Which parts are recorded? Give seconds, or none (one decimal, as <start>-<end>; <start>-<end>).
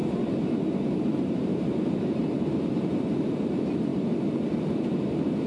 0.0-5.5